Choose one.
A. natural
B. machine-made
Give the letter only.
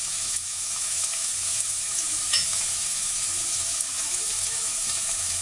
B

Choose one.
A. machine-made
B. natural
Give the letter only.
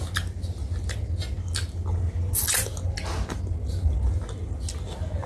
B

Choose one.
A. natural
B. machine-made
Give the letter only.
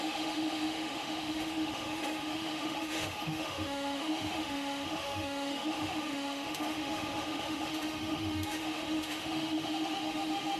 B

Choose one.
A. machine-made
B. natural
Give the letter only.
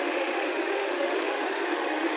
A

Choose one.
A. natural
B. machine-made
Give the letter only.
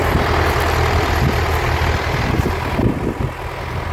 A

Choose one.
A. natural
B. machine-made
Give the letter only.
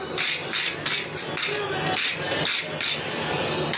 A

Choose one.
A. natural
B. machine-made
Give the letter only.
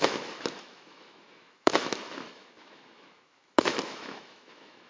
B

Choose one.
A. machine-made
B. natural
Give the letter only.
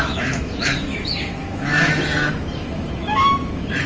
A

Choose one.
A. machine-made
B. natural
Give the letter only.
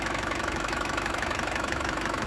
A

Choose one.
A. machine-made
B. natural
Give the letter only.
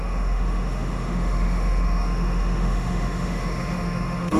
A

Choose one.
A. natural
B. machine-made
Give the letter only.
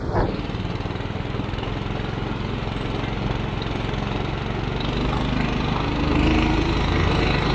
A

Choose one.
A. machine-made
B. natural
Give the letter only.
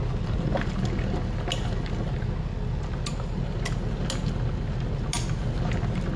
B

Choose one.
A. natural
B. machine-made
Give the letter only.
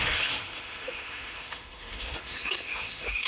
B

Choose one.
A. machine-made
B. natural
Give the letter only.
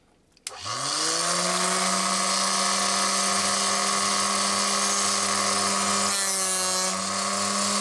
B